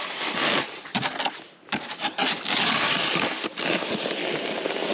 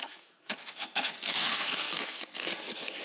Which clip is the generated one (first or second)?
second